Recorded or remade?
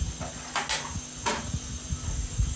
recorded